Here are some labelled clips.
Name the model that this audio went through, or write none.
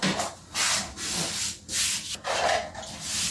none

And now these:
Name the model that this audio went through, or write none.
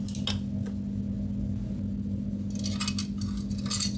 none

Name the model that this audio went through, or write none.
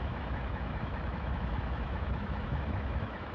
autoencoder, DAC-VAE